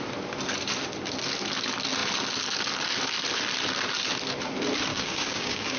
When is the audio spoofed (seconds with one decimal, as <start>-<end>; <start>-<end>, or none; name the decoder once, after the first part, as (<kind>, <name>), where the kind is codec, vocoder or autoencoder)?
4.9-5.8 (codec, DAC)